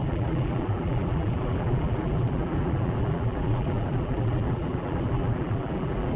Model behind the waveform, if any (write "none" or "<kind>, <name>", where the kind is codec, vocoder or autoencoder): vocoder, BigVGAN v2